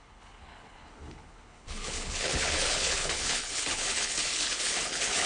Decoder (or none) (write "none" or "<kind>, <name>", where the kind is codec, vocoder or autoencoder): codec, HILCodec